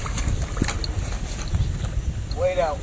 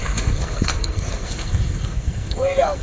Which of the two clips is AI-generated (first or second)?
second